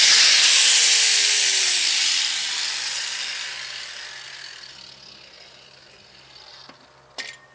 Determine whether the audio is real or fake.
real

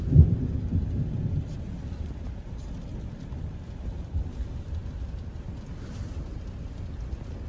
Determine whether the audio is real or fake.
real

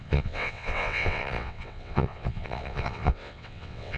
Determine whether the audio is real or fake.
fake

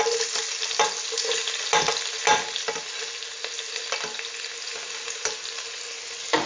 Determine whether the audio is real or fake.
real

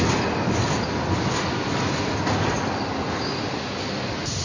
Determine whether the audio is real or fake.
real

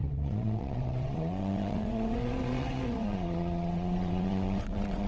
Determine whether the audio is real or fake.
fake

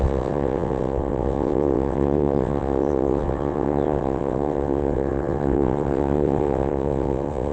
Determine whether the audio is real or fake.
fake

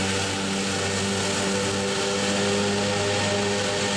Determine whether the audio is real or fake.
real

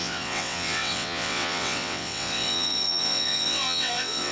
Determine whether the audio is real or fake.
fake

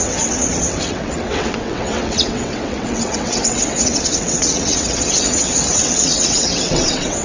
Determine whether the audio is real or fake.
fake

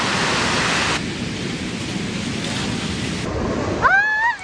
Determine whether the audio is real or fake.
real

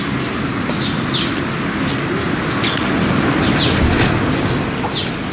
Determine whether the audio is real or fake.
real